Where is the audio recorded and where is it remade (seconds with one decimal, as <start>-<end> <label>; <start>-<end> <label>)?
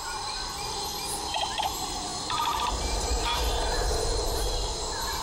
0.0-0.9 remade; 0.9-1.6 recorded; 1.6-5.2 remade